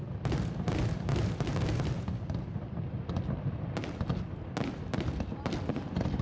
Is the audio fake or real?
real